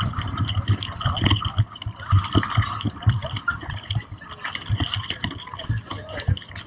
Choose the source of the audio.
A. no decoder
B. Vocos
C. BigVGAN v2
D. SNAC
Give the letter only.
A